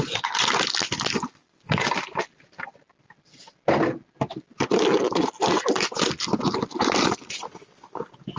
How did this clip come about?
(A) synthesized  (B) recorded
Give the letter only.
B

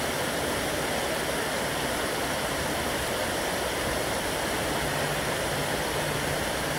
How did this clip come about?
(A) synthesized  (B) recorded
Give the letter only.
B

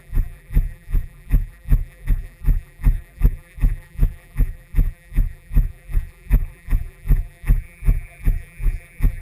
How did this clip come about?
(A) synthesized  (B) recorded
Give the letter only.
A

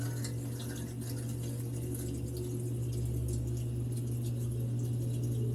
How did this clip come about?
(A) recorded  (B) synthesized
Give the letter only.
A